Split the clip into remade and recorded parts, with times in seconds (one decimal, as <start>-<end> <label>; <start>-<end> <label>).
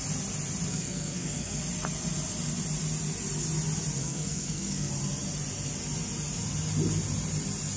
0.0-0.7 recorded; 0.7-1.6 remade; 1.6-4.0 recorded; 4.0-4.9 remade; 4.9-7.8 recorded